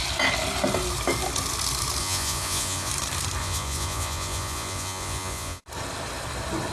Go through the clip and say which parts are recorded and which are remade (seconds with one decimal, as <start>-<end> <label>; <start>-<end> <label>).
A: 0.0-2.0 recorded; 2.0-2.9 remade; 2.9-3.4 recorded; 3.4-5.6 remade; 5.6-6.7 recorded